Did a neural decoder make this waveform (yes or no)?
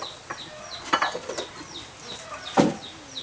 no